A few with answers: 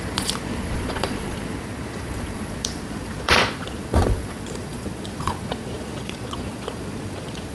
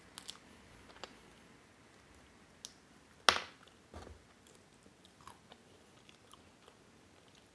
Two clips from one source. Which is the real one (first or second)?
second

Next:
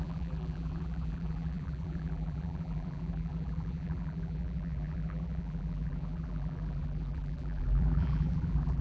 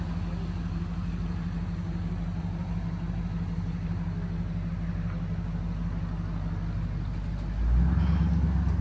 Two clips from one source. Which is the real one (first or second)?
second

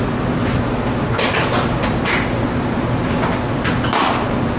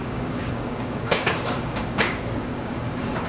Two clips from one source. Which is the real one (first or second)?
first